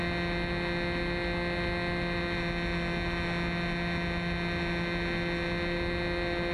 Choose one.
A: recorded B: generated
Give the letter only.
A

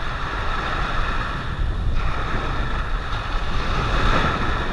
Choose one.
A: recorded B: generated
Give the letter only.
A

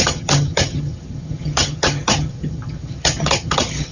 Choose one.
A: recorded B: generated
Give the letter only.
B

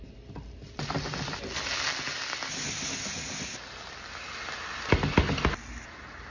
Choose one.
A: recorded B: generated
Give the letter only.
A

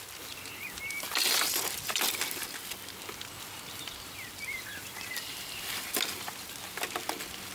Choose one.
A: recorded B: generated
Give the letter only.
A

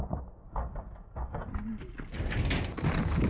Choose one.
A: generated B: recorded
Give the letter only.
B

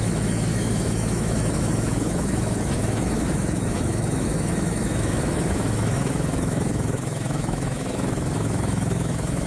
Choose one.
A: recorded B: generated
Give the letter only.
B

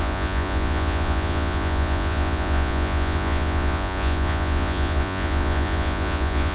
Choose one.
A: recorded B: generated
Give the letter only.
B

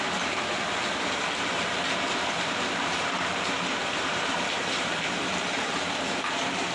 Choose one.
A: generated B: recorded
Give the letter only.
A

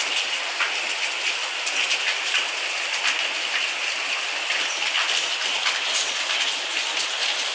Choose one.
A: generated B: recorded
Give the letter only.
B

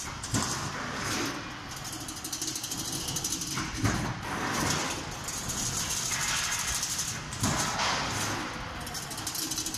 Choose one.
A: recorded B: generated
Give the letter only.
A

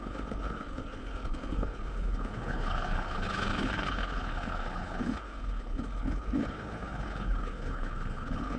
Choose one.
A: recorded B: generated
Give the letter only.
B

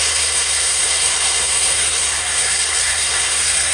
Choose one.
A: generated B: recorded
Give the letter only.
A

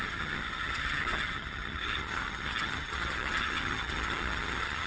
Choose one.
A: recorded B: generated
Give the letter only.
B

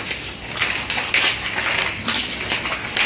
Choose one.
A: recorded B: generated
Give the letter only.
A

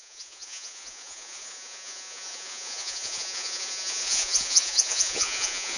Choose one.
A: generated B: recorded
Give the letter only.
A